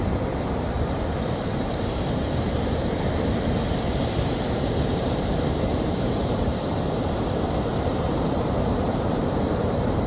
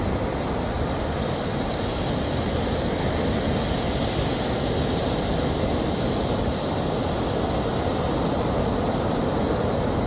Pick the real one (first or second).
second